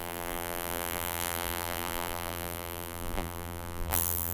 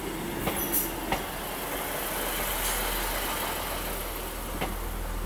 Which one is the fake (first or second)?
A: first